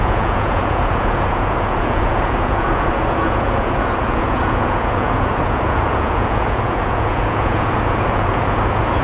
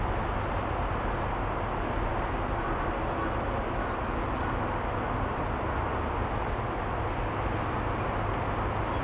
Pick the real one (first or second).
second